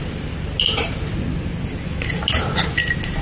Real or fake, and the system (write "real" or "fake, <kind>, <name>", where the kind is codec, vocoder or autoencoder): real